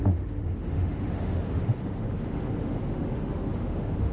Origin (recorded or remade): remade